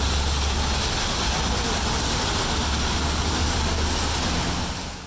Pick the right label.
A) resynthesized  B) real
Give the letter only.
B